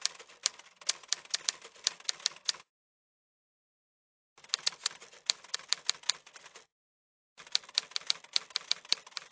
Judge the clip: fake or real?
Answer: real